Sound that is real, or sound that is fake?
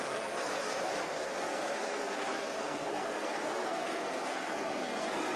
fake